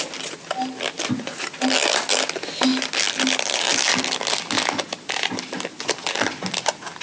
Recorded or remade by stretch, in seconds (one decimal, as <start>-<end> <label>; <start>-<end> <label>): 0.0-7.0 recorded